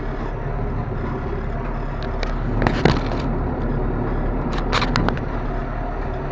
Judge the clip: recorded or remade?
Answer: recorded